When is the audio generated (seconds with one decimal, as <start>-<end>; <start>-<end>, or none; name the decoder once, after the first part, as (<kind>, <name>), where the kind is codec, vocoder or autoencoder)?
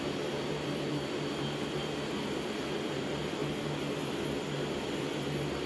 none